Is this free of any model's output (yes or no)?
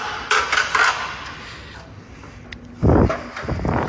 yes